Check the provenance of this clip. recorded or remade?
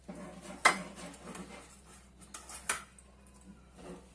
recorded